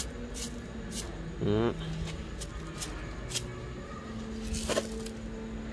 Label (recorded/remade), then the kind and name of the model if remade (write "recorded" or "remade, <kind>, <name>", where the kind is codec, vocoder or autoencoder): recorded